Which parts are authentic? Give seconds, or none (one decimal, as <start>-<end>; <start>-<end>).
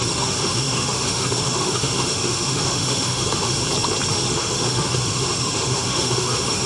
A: 3.6-4.1